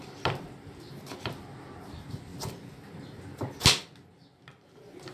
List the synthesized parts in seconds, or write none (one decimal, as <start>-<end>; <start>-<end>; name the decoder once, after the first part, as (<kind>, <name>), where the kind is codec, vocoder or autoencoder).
none